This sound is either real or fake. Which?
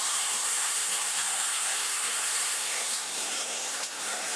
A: fake